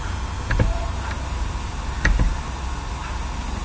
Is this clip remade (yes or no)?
no